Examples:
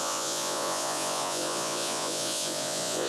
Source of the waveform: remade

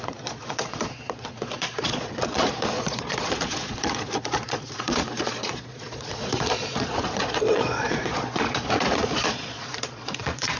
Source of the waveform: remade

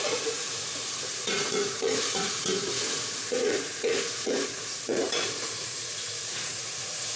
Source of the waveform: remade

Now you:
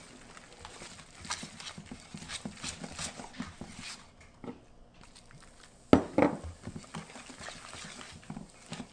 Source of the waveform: recorded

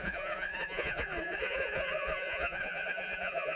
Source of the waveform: remade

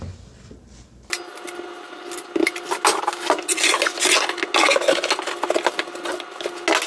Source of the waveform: recorded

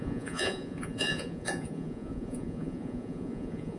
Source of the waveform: remade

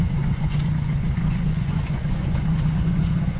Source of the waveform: remade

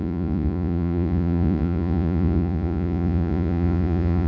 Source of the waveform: remade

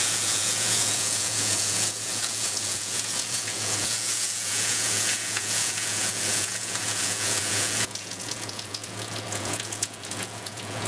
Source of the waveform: remade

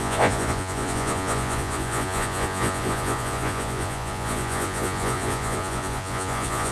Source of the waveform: remade